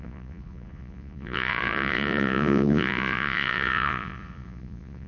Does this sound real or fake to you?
fake